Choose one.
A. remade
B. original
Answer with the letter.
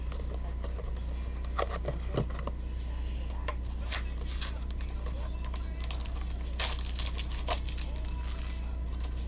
B